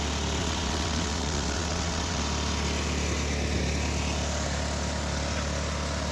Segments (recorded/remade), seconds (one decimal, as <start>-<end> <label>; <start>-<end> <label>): 0.0-0.4 recorded; 0.4-2.2 remade; 2.2-6.1 recorded